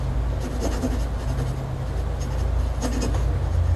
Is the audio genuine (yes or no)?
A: yes